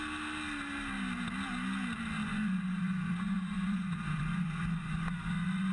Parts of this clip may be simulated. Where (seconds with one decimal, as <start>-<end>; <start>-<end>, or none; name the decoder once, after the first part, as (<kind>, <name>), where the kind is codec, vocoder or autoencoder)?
2.2-5.7 (vocoder, Vocos)